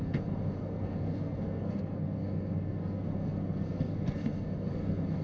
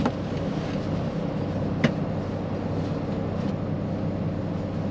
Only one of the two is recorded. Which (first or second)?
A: second